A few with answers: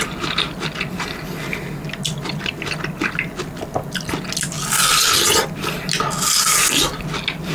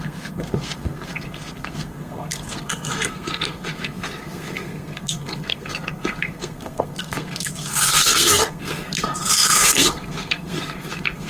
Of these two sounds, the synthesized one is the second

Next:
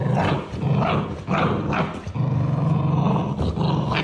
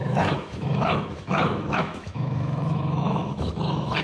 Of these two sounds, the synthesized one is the second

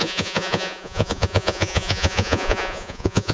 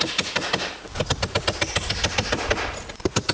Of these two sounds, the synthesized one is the first